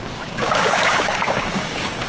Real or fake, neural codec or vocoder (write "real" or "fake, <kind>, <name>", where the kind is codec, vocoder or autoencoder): fake, codec, DAC